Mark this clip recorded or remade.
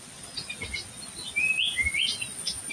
recorded